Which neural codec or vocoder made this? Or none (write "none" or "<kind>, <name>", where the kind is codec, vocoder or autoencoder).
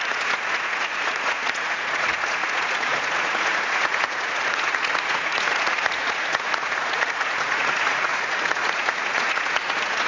vocoder, Vocos